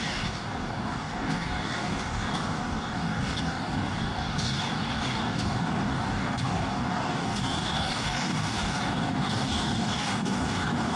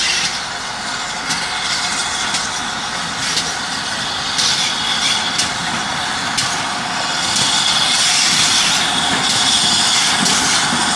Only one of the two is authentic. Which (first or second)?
second